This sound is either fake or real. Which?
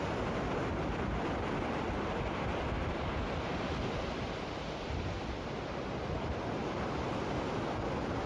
real